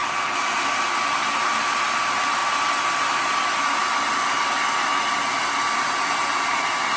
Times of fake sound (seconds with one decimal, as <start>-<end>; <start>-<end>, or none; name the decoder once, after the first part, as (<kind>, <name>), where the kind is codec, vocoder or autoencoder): none